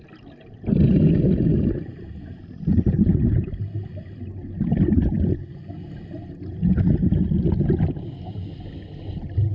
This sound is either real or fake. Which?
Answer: real